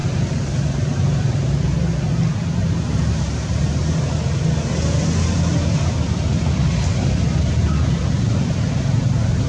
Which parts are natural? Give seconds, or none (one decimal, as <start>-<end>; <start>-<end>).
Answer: 0.0-9.5